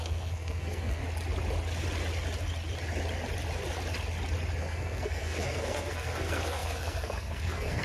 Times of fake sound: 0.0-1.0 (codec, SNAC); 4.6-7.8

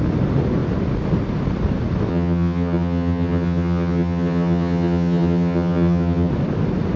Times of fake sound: 2.1-6.3 (vocoder, HiFi-GAN)

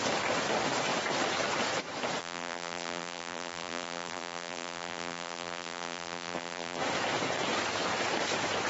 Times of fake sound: 2.2-6.8 (vocoder, BigVGAN v2)

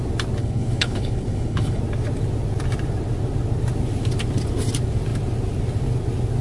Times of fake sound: 0.4-1.8 (codec, HILCodec)

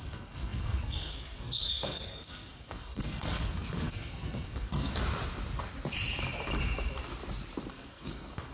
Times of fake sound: 0.0-4.9 (codec, SNAC); 7.7-8.5

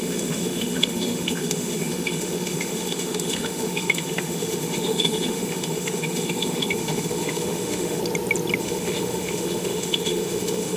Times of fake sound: 0.0-8.0 (autoencoder, DAC-VAE); 8.6-10.8